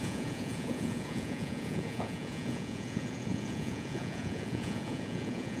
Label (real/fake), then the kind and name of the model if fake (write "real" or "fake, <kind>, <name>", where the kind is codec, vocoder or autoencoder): fake, vocoder, Vocos